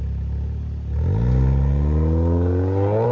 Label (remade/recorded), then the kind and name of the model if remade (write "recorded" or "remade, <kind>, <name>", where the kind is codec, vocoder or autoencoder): recorded